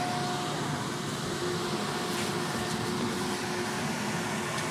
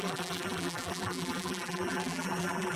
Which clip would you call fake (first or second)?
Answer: second